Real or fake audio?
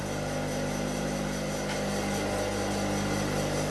real